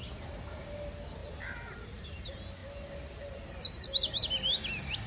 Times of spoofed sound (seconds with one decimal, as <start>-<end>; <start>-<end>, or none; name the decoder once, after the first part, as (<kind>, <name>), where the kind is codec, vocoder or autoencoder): 1.2-2.0 (vocoder, BigVGAN v2)